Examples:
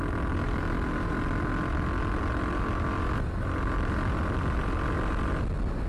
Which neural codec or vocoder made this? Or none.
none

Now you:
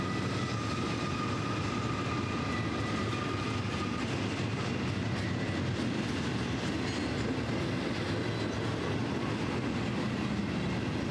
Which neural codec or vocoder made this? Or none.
none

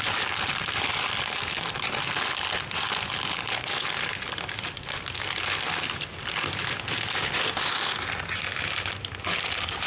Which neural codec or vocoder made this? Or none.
none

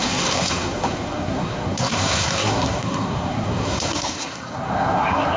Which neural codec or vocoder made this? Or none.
codec, SNAC